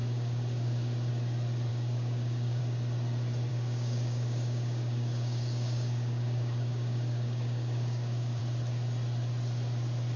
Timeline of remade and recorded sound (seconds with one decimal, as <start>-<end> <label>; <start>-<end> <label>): 0.0-1.1 remade; 1.1-1.7 recorded; 1.7-2.6 remade; 2.6-3.5 recorded; 3.5-8.4 remade; 8.4-10.2 recorded